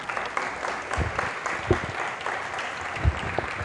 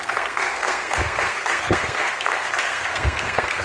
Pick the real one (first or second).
first